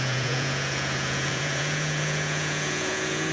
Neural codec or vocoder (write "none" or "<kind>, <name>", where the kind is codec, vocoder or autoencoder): vocoder, Vocos